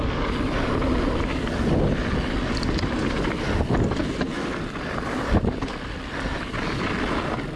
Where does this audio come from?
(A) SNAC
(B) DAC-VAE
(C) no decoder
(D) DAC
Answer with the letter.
C